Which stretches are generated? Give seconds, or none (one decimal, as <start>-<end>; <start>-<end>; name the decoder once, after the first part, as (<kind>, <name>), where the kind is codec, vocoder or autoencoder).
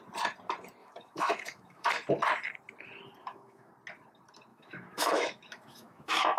0.8-1.9 (autoencoder, DAC-VAE); 3.2-3.7; 4.5-6.4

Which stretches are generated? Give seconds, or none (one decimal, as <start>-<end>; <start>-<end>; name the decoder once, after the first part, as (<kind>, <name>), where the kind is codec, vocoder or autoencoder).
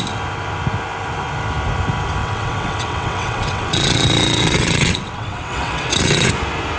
2.2-6.3 (vocoder, WaveNeXt)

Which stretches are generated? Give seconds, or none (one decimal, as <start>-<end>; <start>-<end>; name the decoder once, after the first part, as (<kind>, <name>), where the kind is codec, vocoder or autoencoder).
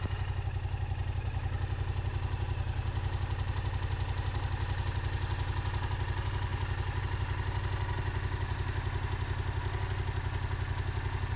none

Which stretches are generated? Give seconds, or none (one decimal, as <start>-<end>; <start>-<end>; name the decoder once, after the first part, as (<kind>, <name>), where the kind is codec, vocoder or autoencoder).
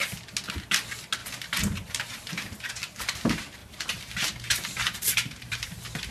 1.2-2.7 (vocoder, BigVGAN v2); 3.6-6.1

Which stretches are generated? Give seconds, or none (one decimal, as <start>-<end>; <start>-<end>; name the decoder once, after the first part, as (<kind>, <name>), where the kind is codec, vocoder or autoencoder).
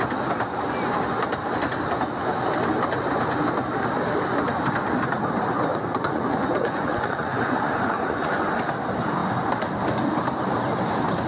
5.7-8.5 (vocoder, Vocos)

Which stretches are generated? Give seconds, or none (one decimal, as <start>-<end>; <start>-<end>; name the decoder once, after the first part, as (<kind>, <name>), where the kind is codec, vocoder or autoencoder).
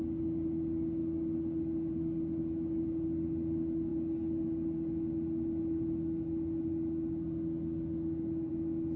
none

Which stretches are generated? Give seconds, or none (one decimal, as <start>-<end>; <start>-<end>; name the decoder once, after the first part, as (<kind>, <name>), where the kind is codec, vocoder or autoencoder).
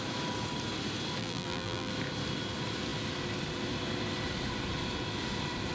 1.2-1.9 (vocoder, BigVGAN v2)